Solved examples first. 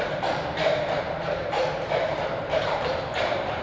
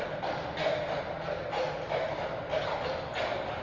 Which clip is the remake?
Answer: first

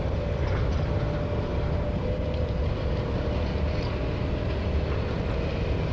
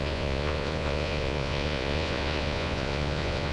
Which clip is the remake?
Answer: second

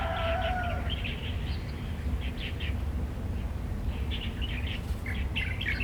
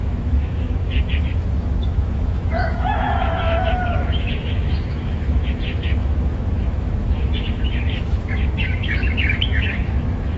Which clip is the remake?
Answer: second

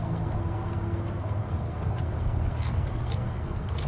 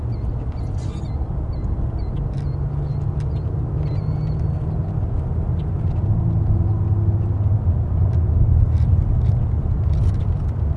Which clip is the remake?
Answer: first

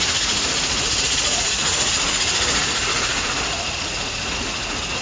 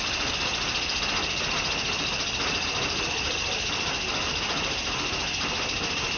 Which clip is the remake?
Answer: first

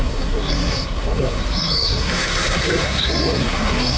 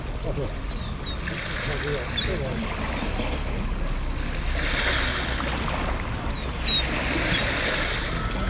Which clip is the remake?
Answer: first